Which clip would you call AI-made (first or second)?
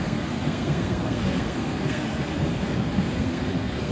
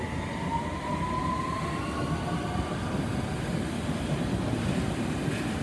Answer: first